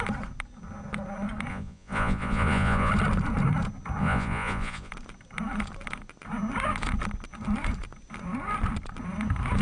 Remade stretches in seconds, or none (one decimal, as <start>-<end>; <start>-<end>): 1.5-2.9; 4.0-4.9